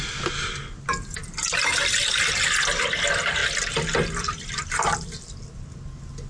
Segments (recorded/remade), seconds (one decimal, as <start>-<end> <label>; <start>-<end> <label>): 0.0-3.4 recorded; 3.4-5.4 remade; 5.4-6.3 recorded